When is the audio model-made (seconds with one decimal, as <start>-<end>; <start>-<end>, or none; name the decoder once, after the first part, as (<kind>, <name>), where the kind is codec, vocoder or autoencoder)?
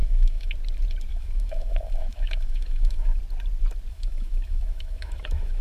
0.0-0.5 (autoencoder, DAC-VAE); 1.1-3.2; 3.9-5.6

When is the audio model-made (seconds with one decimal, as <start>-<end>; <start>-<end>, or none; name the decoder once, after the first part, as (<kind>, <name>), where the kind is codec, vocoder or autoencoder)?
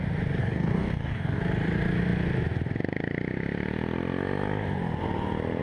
0.4-1.4 (codec, DAC)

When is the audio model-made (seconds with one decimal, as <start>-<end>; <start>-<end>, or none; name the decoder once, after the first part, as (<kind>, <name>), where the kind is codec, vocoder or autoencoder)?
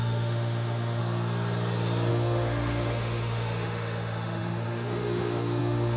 0.0-1.0 (autoencoder, DAC-VAE); 2.1-6.0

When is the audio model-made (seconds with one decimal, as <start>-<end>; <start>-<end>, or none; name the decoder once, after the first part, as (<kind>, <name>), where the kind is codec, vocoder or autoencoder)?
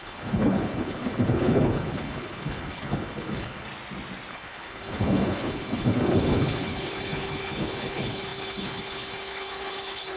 0.0-3.7 (codec, HILCodec); 4.3-10.2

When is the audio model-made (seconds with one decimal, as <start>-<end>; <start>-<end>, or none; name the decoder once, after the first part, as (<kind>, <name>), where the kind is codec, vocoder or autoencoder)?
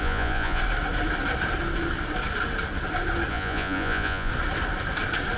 0.0-0.6 (vocoder, Vocos); 3.3-4.3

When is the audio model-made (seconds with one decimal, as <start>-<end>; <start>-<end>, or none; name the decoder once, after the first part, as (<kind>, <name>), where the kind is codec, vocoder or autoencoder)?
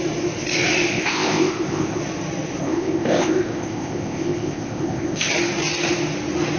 0.9-2.0 (codec, ZipCodec); 2.6-5.3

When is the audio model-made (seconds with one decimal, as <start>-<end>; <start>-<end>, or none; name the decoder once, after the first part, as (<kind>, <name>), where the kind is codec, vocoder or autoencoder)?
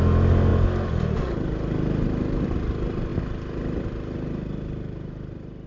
none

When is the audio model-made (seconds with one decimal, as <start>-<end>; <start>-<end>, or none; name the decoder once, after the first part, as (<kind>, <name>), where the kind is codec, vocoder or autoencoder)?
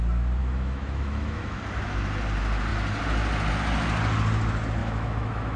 0.4-1.6 (autoencoder, DAC-VAE); 4.8-5.6